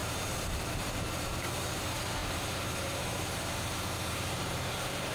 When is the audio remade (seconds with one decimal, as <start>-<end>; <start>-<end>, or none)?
0.0-5.1